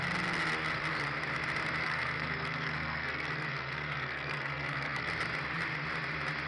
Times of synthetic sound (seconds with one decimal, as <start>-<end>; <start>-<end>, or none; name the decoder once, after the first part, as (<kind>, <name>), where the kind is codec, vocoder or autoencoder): 1.8-5.1 (codec, SNAC)